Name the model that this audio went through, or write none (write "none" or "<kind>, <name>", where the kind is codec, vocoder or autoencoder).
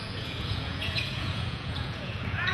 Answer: vocoder, Vocos